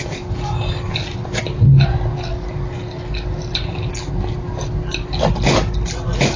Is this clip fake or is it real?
real